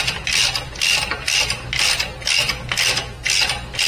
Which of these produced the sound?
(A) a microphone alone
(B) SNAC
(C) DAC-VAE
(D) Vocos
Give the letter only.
A